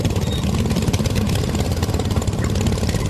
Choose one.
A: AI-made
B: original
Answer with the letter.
B